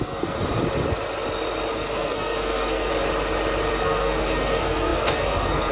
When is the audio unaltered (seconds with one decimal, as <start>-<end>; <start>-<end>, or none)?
0.4-1.7; 2.9-3.7